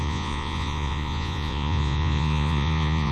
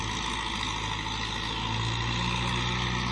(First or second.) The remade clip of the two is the first